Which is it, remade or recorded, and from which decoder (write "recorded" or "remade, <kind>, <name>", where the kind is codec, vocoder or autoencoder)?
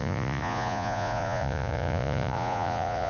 remade, vocoder, Vocos